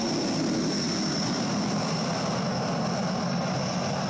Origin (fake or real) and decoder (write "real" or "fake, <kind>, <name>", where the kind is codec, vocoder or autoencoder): real